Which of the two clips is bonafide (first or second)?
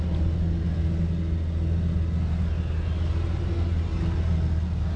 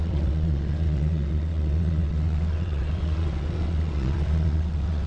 first